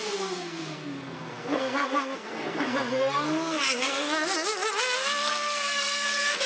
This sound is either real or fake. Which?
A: fake